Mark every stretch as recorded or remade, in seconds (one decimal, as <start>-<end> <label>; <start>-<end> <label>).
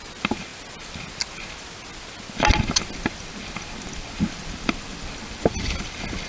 0.0-6.3 recorded